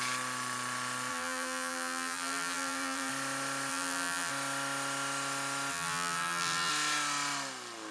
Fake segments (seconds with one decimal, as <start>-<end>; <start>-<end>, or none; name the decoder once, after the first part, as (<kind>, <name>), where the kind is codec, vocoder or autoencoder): 1.1-3.1 (vocoder, BigVGAN v2); 3.7-4.3; 5.7-6.7